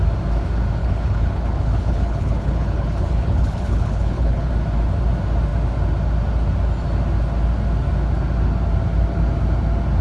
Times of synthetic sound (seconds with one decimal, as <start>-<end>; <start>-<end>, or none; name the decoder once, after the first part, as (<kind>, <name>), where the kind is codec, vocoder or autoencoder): 0.8-4.5 (codec, HILCodec)

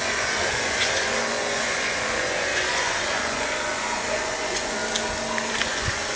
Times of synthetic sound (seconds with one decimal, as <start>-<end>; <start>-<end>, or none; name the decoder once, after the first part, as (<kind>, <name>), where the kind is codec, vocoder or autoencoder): 0.0-4.8 (vocoder, Vocos); 5.5-6.2

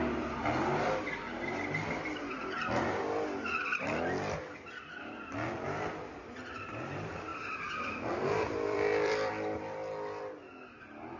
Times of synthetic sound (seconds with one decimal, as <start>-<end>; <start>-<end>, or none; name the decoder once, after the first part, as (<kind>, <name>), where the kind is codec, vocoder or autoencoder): 7.3-9.3 (vocoder, BigVGAN v2)

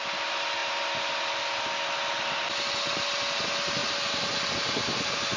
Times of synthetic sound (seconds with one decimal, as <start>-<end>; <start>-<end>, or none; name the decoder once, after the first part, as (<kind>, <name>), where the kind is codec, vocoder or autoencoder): none

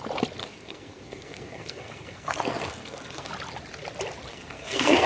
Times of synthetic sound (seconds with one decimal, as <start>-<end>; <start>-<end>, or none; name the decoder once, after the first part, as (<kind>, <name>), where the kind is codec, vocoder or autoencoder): 0.4-3.3 (codec, SNAC); 4.3-5.1

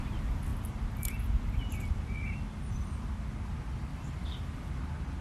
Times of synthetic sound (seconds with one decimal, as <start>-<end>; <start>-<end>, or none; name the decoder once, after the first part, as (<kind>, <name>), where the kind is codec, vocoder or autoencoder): 3.9-4.7 (vocoder, BigVGAN v2)

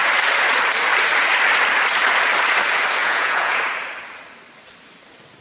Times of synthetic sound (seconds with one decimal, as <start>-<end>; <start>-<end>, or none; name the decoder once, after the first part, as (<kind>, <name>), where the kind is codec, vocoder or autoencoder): 3.0-3.6 (vocoder, Vocos)